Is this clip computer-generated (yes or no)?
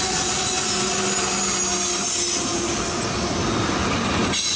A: no